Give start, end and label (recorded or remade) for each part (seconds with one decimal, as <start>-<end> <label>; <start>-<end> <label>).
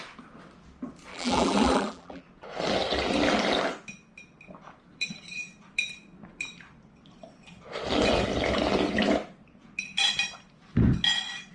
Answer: 0.0-1.1 recorded; 1.1-2.2 remade; 2.2-11.5 recorded